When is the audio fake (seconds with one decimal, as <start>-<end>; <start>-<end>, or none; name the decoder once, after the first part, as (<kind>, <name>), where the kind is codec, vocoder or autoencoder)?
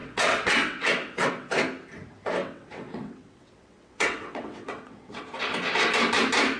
0.0-1.5 (vocoder, WaveNeXt); 2.4-5.2